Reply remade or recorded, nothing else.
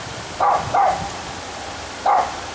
recorded